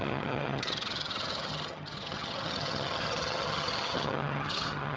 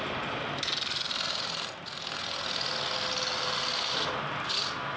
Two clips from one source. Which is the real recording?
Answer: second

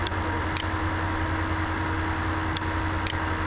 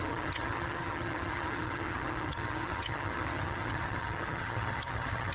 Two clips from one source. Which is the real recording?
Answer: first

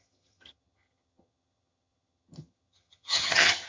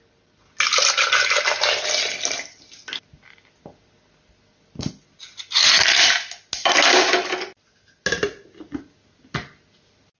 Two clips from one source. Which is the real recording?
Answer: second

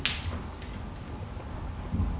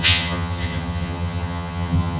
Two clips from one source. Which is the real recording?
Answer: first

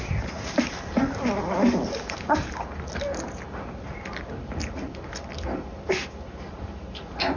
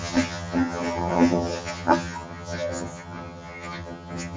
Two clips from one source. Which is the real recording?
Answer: first